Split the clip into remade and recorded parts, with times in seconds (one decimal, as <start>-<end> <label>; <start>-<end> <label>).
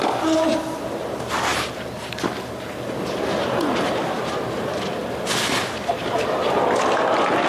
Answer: 0.0-7.5 recorded